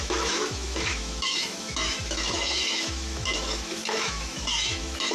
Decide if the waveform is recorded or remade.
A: remade